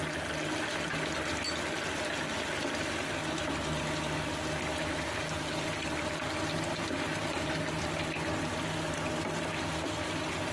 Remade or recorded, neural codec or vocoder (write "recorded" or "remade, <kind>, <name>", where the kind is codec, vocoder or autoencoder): recorded